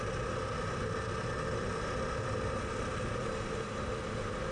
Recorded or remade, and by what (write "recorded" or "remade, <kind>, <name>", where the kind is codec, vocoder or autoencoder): recorded